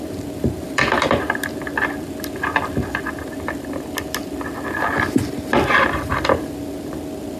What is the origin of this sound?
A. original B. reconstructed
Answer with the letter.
A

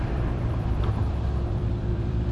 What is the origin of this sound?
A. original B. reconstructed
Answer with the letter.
B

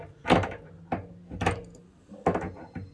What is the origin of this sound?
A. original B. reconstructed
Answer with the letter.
A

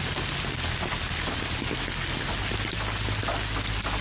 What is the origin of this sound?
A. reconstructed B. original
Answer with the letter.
B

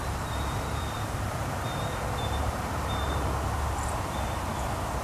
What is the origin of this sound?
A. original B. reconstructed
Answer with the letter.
B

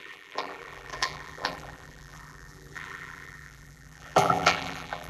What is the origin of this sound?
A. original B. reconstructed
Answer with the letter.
B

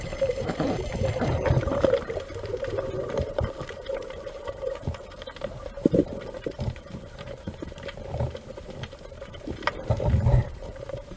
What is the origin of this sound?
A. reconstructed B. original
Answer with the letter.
A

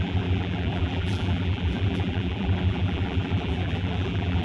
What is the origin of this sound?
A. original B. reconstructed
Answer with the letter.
B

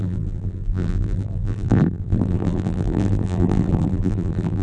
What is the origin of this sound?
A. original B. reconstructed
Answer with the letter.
B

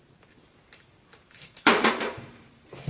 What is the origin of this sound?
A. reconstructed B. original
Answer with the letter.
A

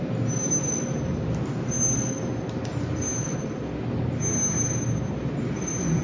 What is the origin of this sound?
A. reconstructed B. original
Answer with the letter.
B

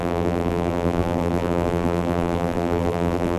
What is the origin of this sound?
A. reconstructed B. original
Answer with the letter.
A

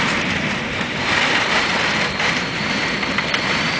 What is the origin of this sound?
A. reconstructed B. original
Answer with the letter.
A